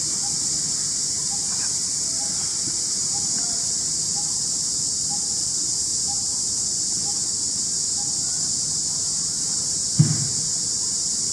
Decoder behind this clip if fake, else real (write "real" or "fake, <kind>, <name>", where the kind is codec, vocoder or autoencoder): real